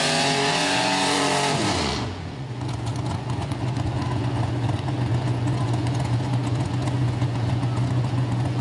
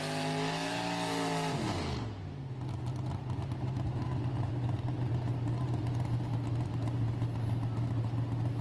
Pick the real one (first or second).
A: second